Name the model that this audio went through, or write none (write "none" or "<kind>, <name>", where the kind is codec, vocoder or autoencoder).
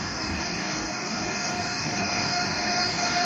codec, DAC